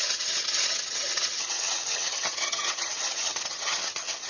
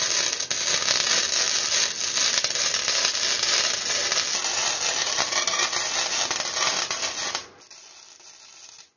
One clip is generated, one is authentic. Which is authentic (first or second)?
second